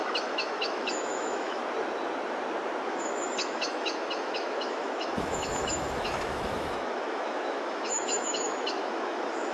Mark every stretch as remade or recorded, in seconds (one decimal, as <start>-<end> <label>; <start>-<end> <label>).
0.0-1.6 remade; 1.6-2.9 recorded; 2.9-9.5 remade